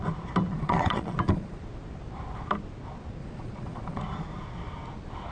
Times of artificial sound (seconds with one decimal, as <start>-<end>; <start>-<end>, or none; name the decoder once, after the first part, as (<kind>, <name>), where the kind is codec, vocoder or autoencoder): 0.5-1.6 (vocoder, Vocos); 3.2-4.0